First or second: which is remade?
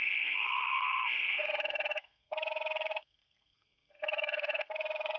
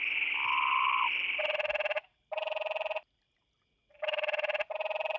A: first